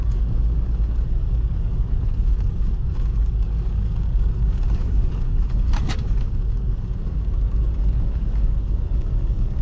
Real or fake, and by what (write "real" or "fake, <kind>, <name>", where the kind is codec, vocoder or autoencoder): fake, codec, DAC